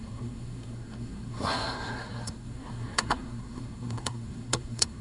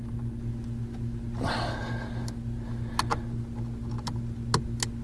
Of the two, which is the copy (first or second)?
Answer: first